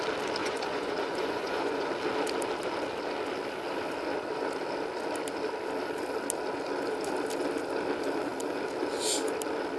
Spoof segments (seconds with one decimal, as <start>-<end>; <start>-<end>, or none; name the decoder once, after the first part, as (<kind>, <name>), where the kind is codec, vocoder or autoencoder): 0.4-1.9 (vocoder, Vocos)

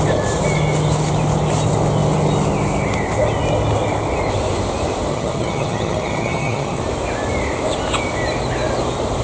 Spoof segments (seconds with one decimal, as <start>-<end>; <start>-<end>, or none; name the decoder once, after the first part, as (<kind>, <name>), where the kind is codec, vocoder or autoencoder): 5.1-6.8 (vocoder, HiFi-GAN)

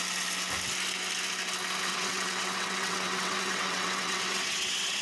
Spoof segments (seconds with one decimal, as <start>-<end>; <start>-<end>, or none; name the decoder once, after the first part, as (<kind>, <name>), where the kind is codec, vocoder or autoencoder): 1.9-5.0 (vocoder, WaveNeXt)